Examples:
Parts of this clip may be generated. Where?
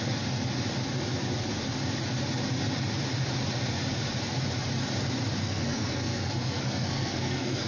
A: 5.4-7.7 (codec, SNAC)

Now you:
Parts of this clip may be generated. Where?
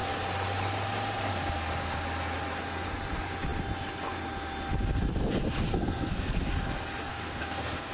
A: 5.7-6.5 (codec, SNAC); 7.1-7.9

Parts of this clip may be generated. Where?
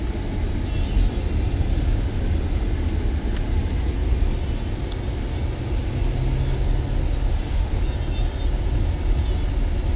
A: 1.7-2.2 (autoencoder, DAC-VAE); 7.3-7.8